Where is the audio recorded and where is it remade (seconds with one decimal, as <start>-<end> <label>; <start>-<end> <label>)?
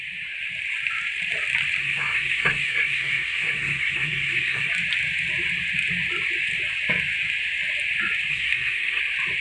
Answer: 0.0-1.8 recorded; 1.8-4.7 remade; 4.7-8.3 recorded; 8.3-9.0 remade; 9.0-9.4 recorded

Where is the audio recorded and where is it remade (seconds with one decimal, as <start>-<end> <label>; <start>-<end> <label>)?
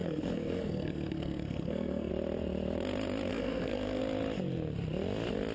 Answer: 0.0-2.1 remade; 2.1-3.3 recorded; 3.3-4.0 remade; 4.0-5.5 recorded